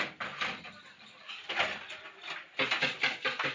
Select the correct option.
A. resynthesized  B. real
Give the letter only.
B